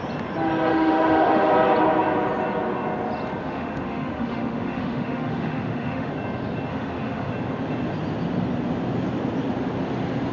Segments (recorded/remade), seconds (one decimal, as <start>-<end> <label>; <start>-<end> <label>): 0.0-0.7 recorded; 0.7-1.5 remade; 1.5-3.4 recorded; 3.4-6.1 remade; 6.1-6.7 recorded; 6.7-7.3 remade; 7.3-10.3 recorded